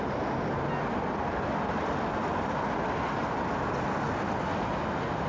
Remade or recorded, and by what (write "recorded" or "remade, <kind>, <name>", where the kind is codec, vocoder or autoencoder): recorded